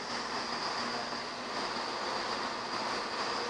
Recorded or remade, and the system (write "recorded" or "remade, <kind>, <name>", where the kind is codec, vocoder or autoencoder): recorded